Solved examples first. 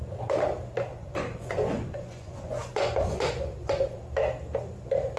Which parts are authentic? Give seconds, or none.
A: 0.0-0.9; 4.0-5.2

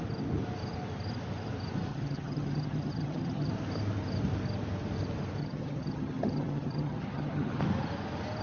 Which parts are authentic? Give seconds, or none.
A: 0.0-1.9; 3.5-5.4; 7.6-8.4

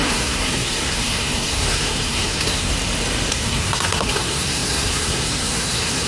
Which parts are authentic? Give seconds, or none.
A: 2.7-3.3

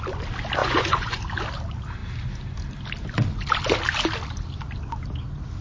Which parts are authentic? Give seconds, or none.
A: 0.0-0.6; 1.2-5.6